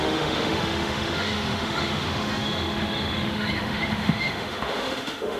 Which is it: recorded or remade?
remade